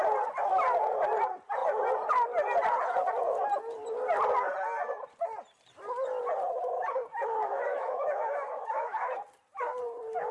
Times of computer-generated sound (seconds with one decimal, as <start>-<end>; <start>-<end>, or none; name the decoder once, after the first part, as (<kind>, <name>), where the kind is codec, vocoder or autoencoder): 7.2-9.2 (autoencoder, DAC-VAE)